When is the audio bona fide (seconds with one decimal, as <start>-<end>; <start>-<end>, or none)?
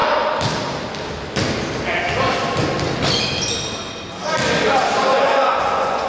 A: 0.0-5.1